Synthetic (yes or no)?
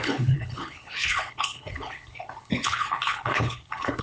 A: yes